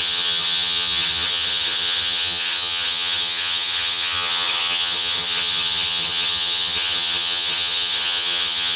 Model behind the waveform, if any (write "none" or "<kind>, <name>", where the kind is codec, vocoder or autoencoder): vocoder, HiFi-GAN